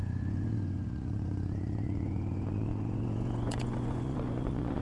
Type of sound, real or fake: fake